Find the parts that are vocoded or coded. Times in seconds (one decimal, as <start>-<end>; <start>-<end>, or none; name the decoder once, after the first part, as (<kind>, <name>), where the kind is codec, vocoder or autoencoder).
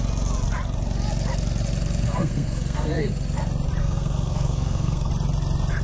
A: 2.1-3.1 (codec, SNAC); 3.8-5.1